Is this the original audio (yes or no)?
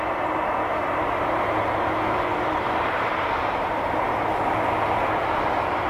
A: yes